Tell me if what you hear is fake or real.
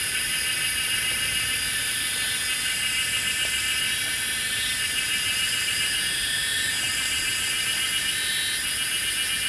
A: real